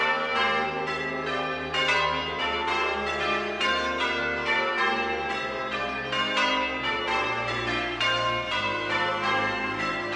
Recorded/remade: recorded